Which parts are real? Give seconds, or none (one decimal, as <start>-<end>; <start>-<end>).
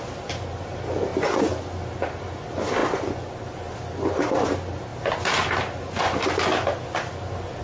0.0-7.6